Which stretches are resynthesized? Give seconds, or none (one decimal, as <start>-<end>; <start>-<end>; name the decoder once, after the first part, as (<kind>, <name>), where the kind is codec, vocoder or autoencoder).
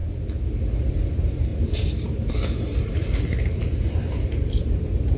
0.9-5.2 (vocoder, BigVGAN v2)